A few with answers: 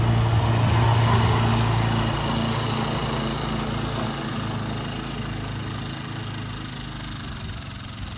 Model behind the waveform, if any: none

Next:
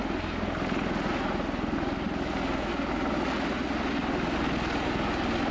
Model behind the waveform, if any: none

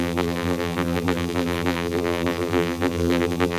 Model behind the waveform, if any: vocoder, BigVGAN v2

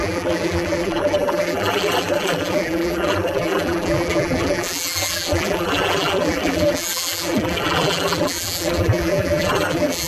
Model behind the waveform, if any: vocoder, BigVGAN v2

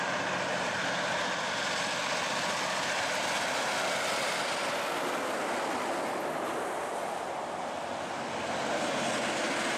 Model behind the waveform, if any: none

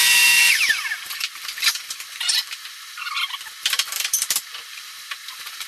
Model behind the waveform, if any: vocoder, BigVGAN v2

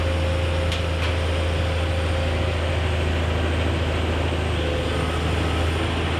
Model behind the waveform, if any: none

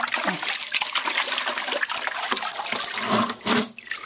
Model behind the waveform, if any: none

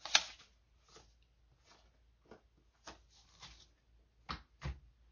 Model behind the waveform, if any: none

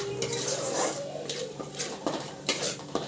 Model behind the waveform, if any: vocoder, BigVGAN v2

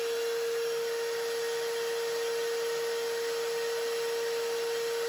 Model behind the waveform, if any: none